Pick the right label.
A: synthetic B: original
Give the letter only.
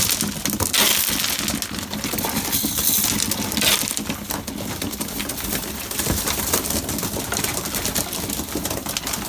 B